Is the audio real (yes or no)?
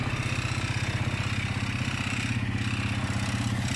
yes